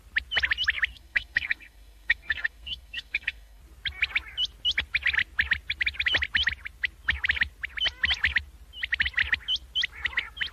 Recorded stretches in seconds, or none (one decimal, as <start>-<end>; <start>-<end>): 0.0-0.9; 3.6-10.5